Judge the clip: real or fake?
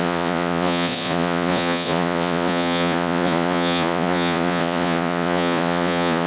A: fake